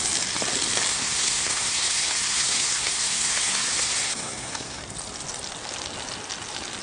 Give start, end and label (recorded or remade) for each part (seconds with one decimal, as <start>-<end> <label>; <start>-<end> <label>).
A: 0.0-0.9 recorded; 0.9-4.8 remade; 4.8-6.8 recorded